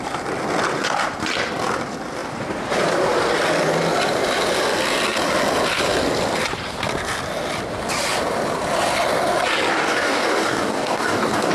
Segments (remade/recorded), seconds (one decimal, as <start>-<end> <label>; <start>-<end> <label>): 0.0-9.7 recorded; 9.7-11.5 remade